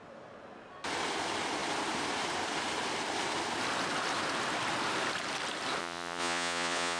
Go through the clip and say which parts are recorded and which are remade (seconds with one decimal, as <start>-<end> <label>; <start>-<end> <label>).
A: 0.0-5.8 recorded; 5.8-7.0 remade